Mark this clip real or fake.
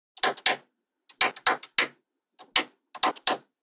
real